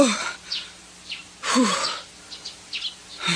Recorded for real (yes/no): yes